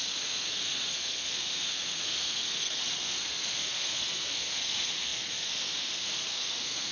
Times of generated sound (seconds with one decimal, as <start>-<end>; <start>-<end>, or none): 0.0-6.9